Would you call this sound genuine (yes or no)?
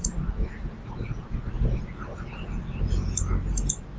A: yes